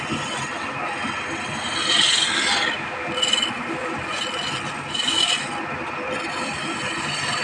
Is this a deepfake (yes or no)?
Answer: no